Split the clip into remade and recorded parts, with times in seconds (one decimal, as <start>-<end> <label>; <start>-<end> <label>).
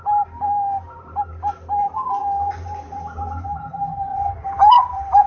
0.0-1.3 remade; 1.3-1.8 recorded; 1.8-5.3 remade